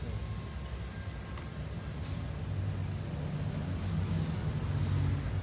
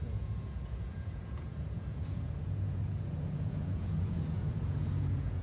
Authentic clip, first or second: first